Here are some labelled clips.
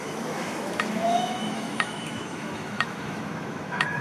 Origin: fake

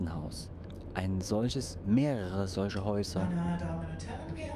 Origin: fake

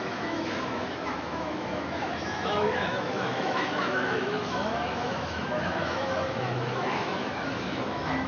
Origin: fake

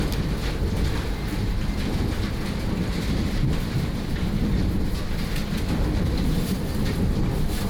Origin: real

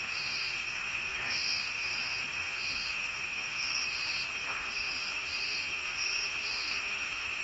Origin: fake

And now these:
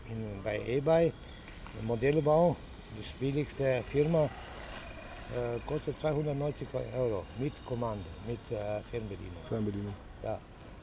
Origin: real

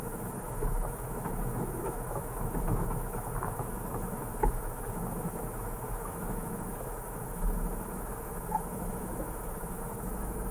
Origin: fake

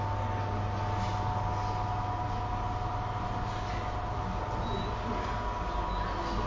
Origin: real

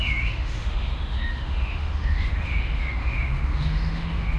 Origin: fake